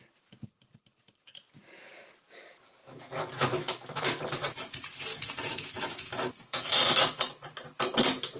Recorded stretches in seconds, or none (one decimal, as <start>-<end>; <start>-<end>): 0.0-3.5; 4.2-5.1; 7.3-8.4